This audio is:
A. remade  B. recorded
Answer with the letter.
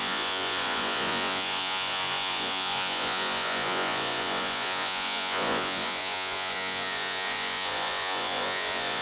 A